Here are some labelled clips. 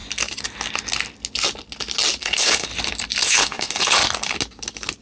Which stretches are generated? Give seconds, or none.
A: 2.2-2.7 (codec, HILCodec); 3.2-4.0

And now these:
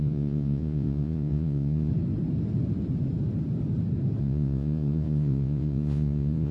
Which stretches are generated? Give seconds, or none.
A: 0.0-1.9 (vocoder, Vocos); 4.2-6.5